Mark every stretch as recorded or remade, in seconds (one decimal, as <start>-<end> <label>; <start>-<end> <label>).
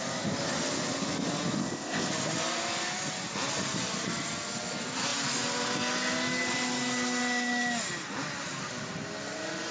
0.0-1.6 recorded; 1.6-2.1 remade; 2.1-9.7 recorded